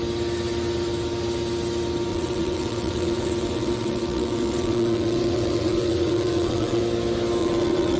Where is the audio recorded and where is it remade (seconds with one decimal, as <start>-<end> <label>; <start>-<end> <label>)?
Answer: 0.0-2.1 recorded; 2.1-6.8 remade; 6.8-7.4 recorded; 7.4-8.0 remade